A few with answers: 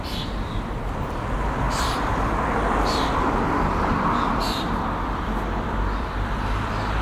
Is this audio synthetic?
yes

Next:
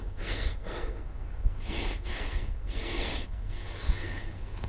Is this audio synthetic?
yes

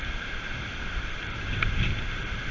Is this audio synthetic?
yes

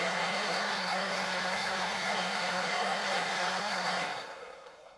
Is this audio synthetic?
yes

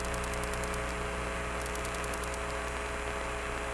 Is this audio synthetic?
no